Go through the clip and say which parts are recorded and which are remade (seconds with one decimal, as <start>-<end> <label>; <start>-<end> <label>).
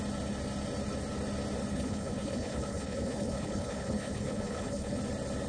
0.0-1.7 recorded; 1.7-5.0 remade; 5.0-5.5 recorded